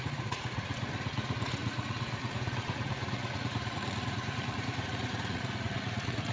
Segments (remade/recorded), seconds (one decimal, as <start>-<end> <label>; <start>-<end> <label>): 0.0-6.3 remade

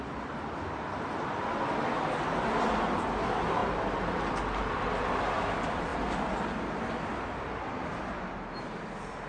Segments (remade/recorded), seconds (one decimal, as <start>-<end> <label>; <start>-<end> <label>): 0.0-9.3 recorded

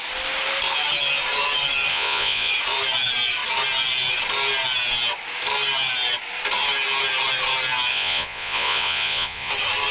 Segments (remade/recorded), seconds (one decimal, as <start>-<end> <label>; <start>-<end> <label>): 0.0-1.9 recorded; 1.9-2.5 remade; 2.5-7.9 recorded; 7.9-9.5 remade; 9.5-9.9 recorded

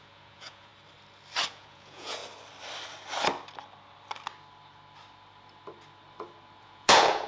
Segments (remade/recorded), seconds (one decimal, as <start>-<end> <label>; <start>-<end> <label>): 0.0-0.7 remade; 0.7-1.5 recorded; 1.5-2.2 remade; 2.2-6.6 recorded; 6.6-7.3 remade